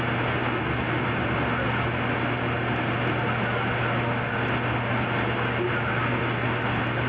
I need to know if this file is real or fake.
real